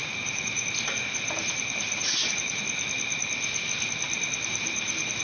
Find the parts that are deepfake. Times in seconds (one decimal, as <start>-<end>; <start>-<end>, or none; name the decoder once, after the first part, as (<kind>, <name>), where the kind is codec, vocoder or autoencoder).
0.0-2.6 (vocoder, BigVGAN v2); 4.5-5.2